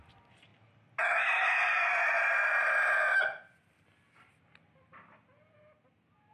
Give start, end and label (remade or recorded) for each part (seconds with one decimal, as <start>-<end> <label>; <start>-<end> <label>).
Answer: 0.0-6.3 recorded